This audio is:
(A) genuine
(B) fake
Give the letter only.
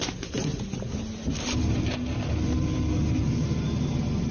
B